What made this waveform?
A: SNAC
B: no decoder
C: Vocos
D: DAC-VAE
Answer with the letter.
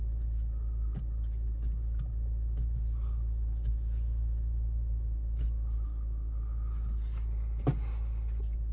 B